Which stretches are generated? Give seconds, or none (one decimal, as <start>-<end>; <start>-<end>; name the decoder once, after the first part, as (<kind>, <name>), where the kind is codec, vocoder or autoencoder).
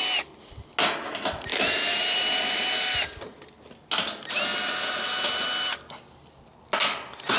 1.5-2.6 (vocoder, BigVGAN v2)